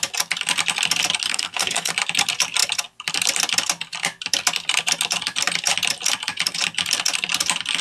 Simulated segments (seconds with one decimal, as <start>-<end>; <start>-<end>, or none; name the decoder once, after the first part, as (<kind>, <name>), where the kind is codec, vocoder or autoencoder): 1.3-1.9 (codec, SNAC)